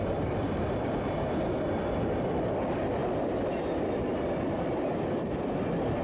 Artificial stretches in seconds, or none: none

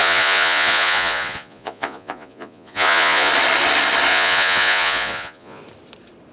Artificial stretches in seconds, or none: 0.0-3.3 (vocoder, Vocos); 4.1-5.6

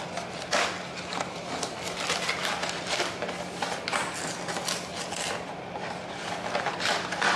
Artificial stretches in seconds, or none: none

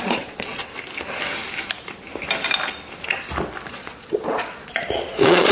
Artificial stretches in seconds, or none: 0.0-0.7 (vocoder, Vocos); 3.7-5.5